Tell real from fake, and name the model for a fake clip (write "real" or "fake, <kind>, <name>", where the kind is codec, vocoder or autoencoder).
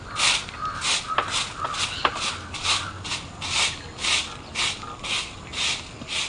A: real